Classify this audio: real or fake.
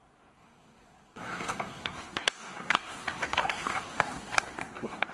fake